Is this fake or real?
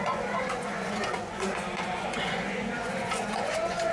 fake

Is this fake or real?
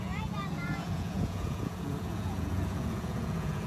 fake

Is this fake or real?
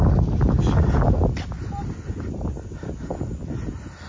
real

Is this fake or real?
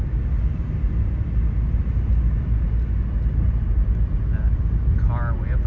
real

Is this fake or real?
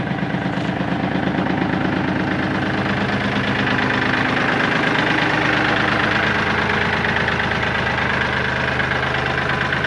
real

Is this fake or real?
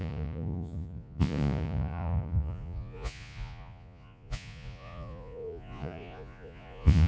fake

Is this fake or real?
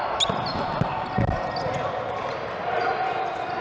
real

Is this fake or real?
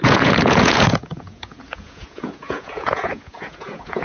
fake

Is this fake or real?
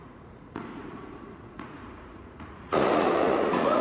fake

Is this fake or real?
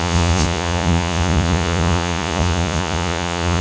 fake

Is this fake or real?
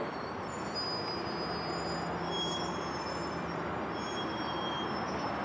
real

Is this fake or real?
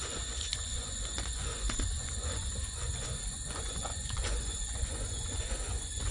fake